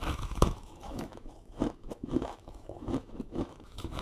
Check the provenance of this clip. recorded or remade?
remade